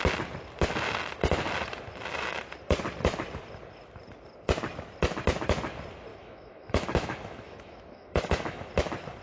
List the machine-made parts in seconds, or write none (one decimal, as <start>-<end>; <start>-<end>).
6.1-8.7